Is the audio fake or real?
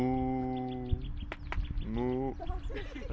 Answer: real